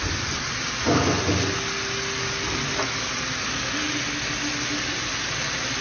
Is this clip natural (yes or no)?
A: yes